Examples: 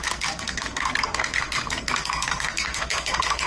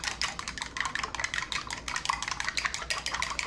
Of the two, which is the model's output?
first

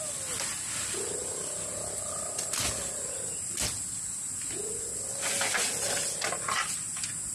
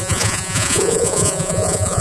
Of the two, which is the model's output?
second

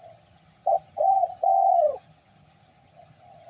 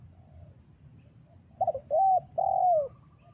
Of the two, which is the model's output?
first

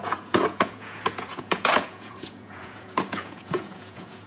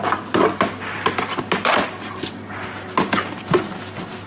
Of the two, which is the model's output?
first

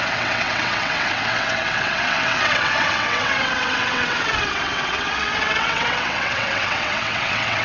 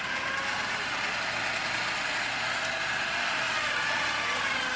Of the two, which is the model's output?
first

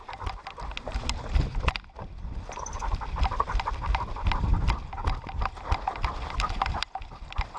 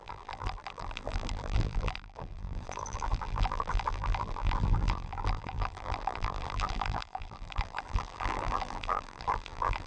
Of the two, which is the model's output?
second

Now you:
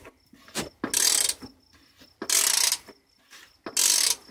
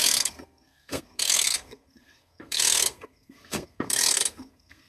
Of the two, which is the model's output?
second